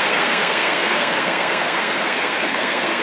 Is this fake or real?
fake